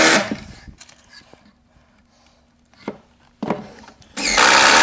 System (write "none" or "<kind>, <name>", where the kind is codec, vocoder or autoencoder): none